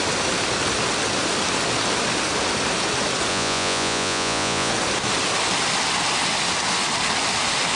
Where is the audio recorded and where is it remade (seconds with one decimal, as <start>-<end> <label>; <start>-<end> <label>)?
0.0-3.3 recorded; 3.3-4.7 remade; 4.7-7.8 recorded